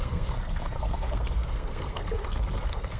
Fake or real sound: fake